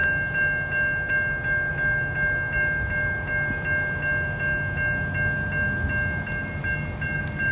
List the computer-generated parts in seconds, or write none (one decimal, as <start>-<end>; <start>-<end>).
none